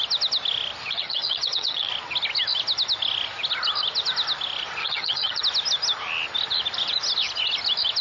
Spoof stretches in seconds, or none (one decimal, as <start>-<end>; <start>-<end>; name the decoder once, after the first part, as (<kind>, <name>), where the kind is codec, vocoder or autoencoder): 0.8-1.9 (vocoder, HiFi-GAN); 4.8-5.4